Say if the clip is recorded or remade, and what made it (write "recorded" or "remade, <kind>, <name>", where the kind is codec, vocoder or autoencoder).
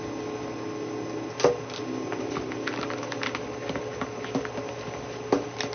recorded